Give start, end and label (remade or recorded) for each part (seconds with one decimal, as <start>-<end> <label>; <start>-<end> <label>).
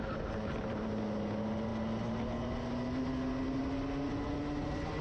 0.0-5.0 recorded